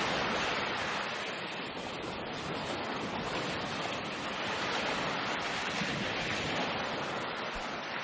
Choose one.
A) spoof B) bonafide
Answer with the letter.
A